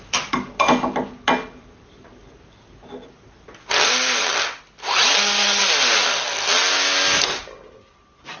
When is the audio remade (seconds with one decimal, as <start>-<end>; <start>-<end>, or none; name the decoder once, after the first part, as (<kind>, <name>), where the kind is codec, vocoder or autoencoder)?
none